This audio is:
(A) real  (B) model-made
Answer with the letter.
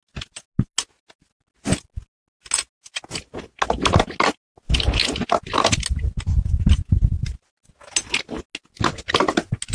A